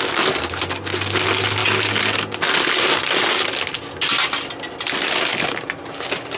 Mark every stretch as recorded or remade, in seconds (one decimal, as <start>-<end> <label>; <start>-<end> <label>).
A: 0.0-6.4 recorded